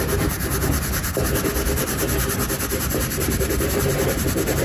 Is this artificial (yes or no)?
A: no